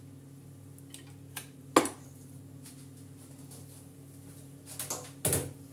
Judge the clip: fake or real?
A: real